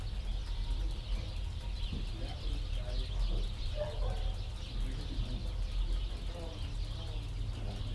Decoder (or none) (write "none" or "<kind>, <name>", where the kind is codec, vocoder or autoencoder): none